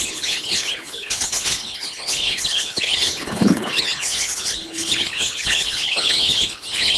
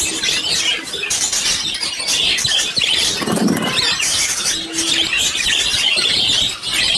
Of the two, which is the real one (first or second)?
second